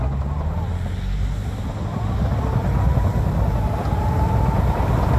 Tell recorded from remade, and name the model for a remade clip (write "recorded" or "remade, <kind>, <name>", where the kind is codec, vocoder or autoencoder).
recorded